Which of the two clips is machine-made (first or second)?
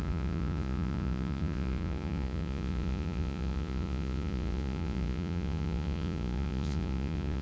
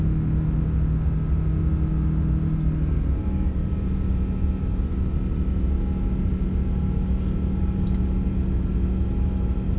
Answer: first